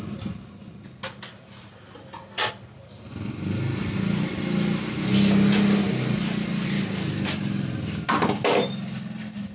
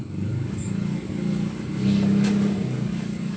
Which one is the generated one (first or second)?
second